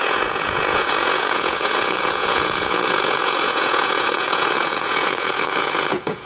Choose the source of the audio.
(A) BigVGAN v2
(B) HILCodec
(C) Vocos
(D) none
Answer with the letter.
C